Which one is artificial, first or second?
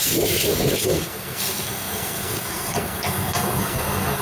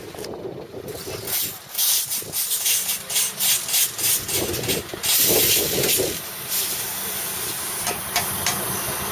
first